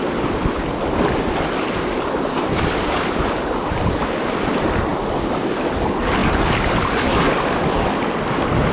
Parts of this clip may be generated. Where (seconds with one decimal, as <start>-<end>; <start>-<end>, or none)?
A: none